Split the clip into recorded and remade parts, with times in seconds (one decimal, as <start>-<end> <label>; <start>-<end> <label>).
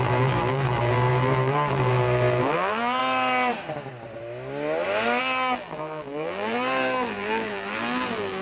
0.0-3.0 remade; 3.0-5.2 recorded; 5.2-8.4 remade